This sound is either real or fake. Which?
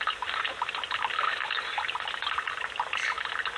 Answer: real